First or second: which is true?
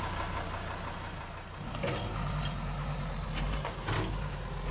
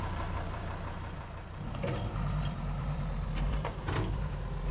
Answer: first